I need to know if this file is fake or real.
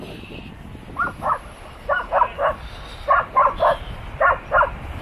real